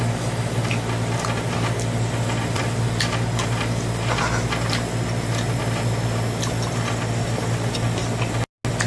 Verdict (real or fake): real